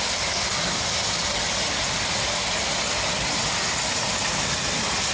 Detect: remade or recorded recorded